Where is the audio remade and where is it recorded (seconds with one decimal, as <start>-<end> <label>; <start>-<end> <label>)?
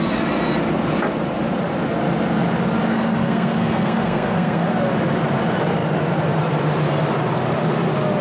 0.0-2.9 recorded; 2.9-4.7 remade; 4.7-8.2 recorded